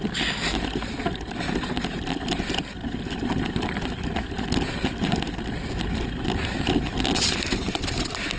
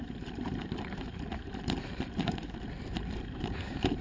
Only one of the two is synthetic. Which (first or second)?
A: second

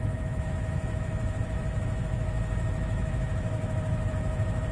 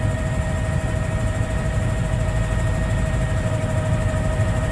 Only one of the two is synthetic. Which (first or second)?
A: first